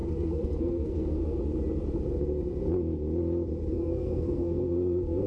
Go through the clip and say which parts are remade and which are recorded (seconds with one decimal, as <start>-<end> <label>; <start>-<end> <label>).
0.0-1.4 remade; 1.4-3.7 recorded; 3.7-5.3 remade